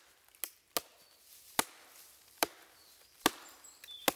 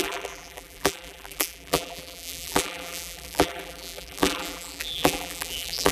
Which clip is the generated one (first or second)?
second